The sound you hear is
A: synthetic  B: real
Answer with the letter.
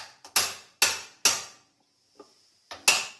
B